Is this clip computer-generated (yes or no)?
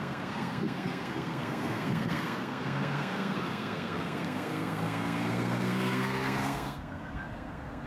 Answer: yes